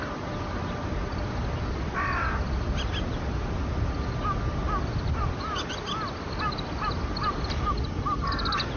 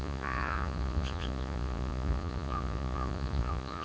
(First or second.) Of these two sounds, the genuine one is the first